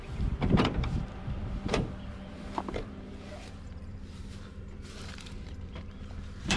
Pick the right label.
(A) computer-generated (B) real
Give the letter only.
A